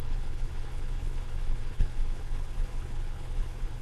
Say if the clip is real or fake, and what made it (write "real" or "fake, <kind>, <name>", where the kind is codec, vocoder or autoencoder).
fake, codec, HILCodec